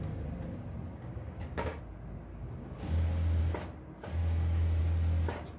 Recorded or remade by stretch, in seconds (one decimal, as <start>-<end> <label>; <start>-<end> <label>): 0.0-0.9 recorded; 0.9-1.8 remade; 1.8-2.3 recorded; 2.3-3.4 remade; 3.4-4.2 recorded; 4.2-4.8 remade; 4.8-5.6 recorded

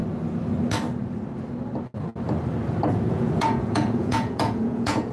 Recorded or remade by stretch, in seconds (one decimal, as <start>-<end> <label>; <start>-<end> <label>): 0.0-3.1 recorded; 3.1-5.1 remade

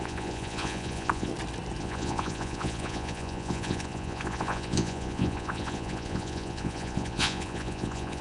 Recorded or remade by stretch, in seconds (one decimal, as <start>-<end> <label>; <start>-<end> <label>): 0.0-1.3 remade; 1.3-1.8 recorded; 1.8-8.2 remade

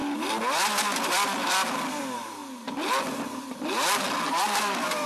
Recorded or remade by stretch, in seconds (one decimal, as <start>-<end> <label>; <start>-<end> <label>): 0.0-2.4 remade; 2.4-4.4 recorded; 4.4-5.1 remade

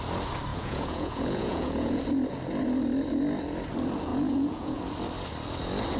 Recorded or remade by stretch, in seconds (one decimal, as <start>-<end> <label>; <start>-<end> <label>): 0.0-0.5 recorded; 0.5-2.0 remade; 2.0-4.1 recorded; 4.1-4.8 remade; 4.8-6.0 recorded

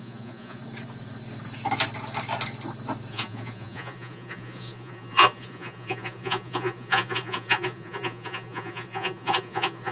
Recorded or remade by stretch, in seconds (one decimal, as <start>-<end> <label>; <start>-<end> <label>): 0.0-0.6 remade; 0.6-3.1 recorded; 3.1-9.9 remade

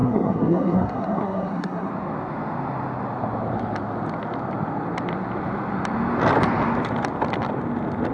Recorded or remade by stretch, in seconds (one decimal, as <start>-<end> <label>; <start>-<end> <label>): 0.0-1.9 remade; 1.9-8.1 recorded